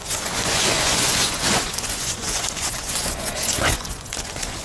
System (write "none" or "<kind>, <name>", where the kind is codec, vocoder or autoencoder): vocoder, Vocos